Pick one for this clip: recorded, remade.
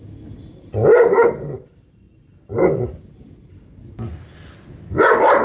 recorded